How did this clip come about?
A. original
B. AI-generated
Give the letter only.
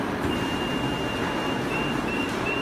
A